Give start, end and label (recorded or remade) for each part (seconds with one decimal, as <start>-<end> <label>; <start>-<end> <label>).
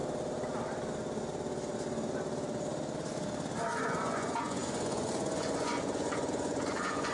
0.0-3.8 recorded; 3.8-7.1 remade